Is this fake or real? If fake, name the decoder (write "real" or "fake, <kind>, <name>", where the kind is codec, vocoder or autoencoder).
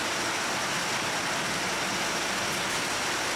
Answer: real